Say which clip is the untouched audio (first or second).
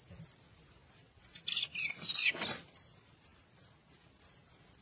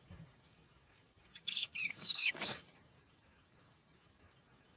first